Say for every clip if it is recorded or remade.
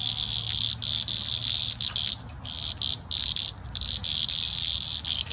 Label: recorded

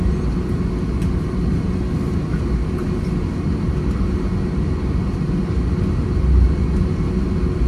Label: recorded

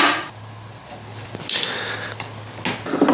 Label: recorded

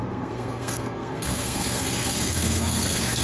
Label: remade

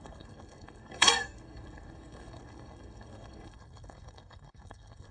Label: remade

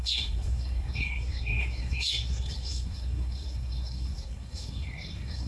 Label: remade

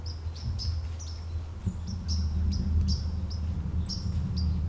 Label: recorded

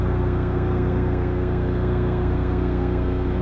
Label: remade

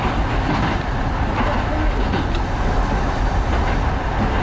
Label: recorded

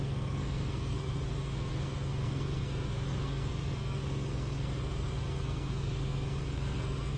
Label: remade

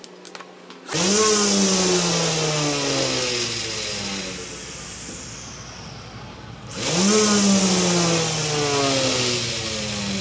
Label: recorded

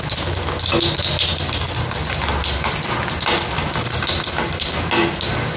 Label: recorded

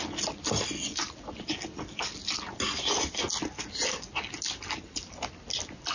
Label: recorded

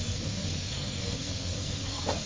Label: remade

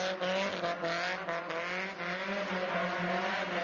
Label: recorded